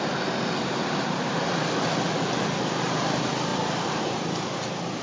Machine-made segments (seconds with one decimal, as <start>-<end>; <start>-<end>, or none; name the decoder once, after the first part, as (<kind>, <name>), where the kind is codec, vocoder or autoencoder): 0.6-1.3 (vocoder, BigVGAN v2); 3.5-5.0